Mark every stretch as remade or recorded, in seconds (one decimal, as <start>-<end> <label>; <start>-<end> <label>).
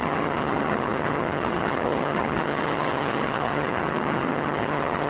0.0-5.1 remade